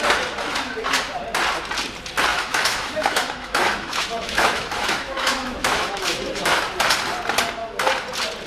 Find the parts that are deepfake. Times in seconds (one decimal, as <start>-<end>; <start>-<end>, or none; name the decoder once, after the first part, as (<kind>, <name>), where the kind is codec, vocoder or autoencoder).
2.3-6.6 (autoencoder, DAC-VAE)